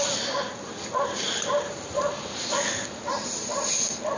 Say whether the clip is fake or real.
real